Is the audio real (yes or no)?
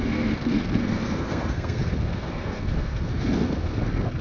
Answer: no